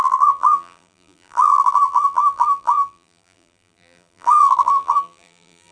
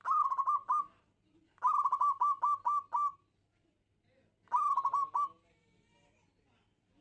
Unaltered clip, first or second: second